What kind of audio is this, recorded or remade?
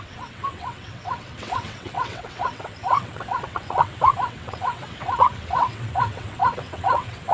remade